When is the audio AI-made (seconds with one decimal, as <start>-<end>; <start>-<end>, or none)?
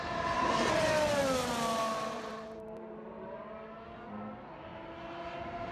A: 2.3-3.4